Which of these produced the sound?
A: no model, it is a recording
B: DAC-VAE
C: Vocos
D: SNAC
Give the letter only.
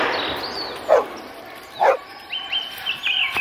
A